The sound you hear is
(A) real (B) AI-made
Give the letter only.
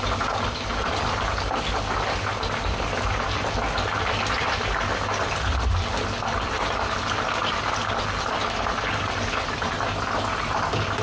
A